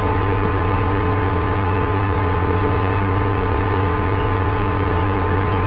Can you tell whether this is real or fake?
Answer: fake